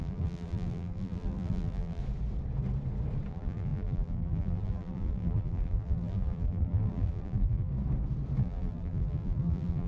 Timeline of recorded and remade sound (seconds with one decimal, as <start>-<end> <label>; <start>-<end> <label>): 0.0-2.0 remade; 2.0-3.3 recorded; 3.3-7.7 remade; 7.7-8.4 recorded; 8.4-9.9 remade